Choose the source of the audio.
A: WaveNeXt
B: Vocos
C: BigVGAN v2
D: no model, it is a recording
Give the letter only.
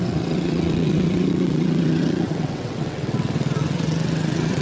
A